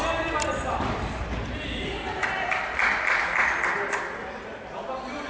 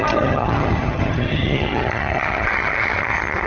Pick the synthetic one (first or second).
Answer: second